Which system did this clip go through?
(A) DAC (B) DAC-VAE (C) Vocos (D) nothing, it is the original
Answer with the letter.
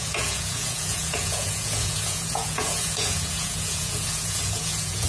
C